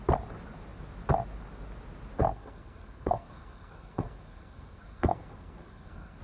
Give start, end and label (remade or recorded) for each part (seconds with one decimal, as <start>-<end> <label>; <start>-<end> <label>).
0.0-2.3 recorded; 2.3-6.2 remade